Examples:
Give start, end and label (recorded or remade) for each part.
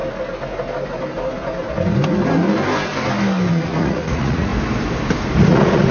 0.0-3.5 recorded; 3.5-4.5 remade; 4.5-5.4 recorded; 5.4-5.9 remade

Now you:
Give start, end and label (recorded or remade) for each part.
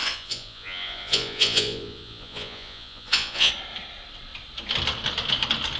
0.0-3.5 remade; 3.5-5.8 recorded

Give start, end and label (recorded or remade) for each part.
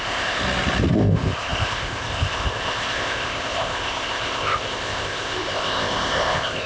0.0-0.4 remade; 0.4-0.9 recorded; 0.9-6.7 remade